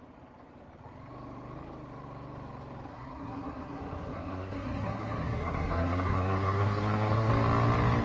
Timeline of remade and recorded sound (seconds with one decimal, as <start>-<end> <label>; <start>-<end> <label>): 0.0-2.9 recorded; 2.9-7.3 remade; 7.3-8.0 recorded